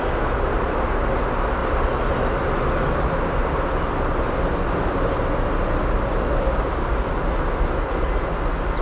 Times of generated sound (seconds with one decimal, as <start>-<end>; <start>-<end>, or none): none

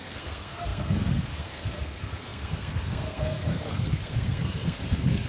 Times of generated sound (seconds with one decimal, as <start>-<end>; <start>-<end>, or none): 0.0-5.3

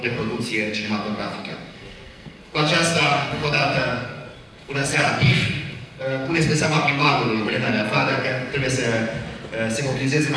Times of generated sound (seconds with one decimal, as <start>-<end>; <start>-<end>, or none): 0.0-8.5; 9.8-10.4

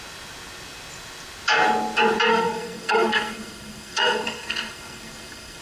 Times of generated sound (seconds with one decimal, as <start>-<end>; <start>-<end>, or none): 2.3-5.6

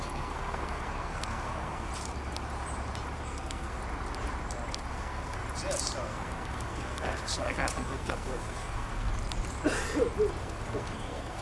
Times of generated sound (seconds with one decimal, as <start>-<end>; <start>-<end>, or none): 0.0-1.9; 3.2-3.8; 4.9-5.4; 6.0-9.1; 10.4-11.4

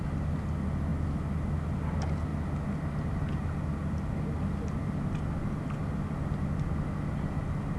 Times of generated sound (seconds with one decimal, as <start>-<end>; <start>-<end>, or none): none

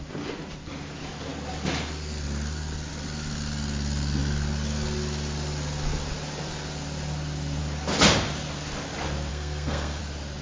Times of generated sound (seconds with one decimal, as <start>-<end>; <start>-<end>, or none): 9.3-10.0

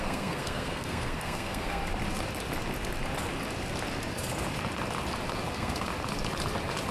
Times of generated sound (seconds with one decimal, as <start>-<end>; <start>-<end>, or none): 0.0-1.8; 5.5-5.9